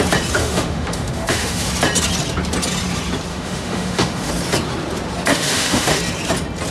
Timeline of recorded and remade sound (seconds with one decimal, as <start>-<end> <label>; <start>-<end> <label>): 0.0-0.4 recorded; 0.4-1.7 remade; 1.7-3.3 recorded; 3.3-4.3 remade; 4.3-5.3 recorded; 5.3-6.0 remade; 6.0-6.7 recorded

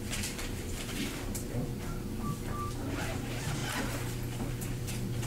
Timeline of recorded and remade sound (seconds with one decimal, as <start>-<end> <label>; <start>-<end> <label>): 0.0-1.7 remade; 1.7-2.9 recorded; 2.9-3.6 remade; 3.6-4.5 recorded; 4.5-5.3 remade

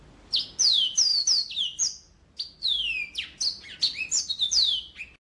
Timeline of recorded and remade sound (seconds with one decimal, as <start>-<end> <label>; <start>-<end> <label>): 0.0-5.2 recorded

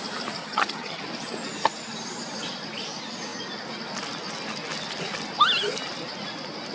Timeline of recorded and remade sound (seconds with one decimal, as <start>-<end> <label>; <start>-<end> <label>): 0.0-0.4 recorded; 0.4-1.0 remade; 1.0-6.7 recorded

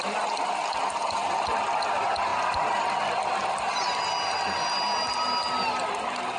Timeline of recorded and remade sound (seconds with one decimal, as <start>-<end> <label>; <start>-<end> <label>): 0.0-2.3 recorded; 2.3-2.9 remade; 2.9-6.4 recorded

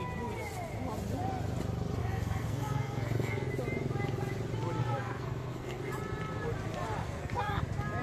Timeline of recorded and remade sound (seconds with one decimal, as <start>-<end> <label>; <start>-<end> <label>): 0.0-2.0 recorded; 2.0-3.5 remade; 3.5-4.8 recorded; 4.8-5.9 remade; 5.9-7.0 recorded; 7.0-7.6 remade; 7.6-8.0 recorded

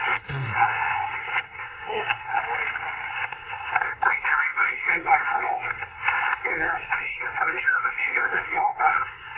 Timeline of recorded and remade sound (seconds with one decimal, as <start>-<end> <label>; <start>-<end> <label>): 0.0-2.4 remade; 2.4-3.1 recorded; 3.1-9.4 remade

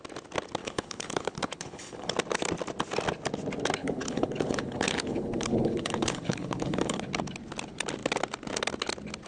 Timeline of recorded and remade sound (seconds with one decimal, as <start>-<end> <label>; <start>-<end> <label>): 0.0-0.6 recorded; 0.6-2.1 remade; 2.1-3.8 recorded; 3.8-7.1 remade; 7.1-9.3 recorded